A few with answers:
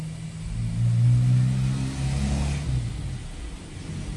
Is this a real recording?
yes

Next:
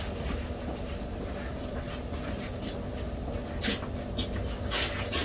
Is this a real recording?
yes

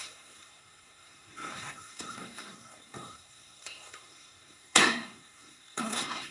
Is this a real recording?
no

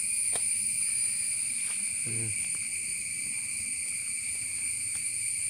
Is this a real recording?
yes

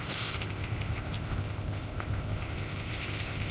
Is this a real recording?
no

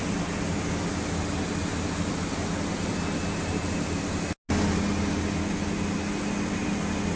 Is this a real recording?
yes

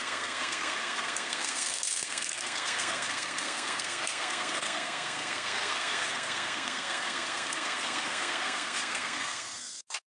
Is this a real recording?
no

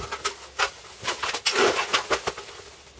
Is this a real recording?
yes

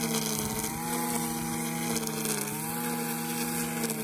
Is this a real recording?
yes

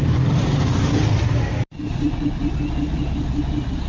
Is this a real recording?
no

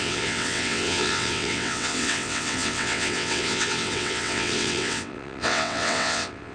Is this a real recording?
no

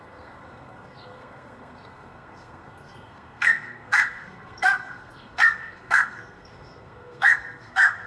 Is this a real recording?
no